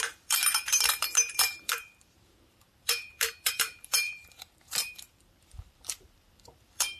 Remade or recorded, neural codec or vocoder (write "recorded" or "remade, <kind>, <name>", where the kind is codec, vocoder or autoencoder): remade, vocoder, BigVGAN v2